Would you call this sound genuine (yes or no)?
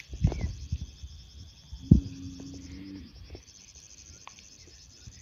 yes